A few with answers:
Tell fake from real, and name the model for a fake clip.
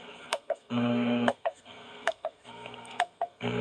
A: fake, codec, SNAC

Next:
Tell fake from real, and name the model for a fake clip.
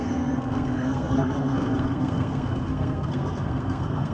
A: fake, codec, SNAC